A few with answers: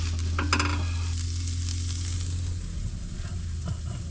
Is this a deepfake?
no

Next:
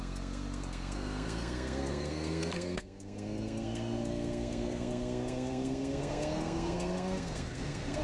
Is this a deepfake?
yes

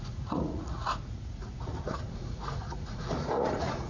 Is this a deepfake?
yes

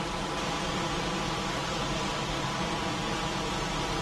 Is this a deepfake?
no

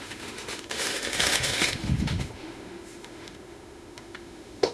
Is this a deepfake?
yes